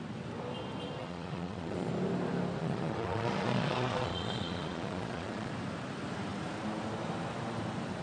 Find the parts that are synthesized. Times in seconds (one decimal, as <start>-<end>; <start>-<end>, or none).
1.0-1.9; 2.6-5.5

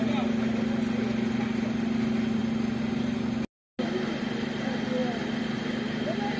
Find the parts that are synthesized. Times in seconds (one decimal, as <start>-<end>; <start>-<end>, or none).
none